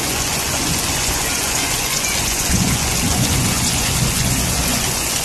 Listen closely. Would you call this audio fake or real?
fake